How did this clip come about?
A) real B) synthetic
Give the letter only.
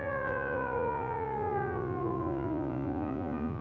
B